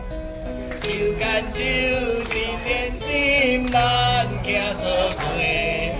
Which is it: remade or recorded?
recorded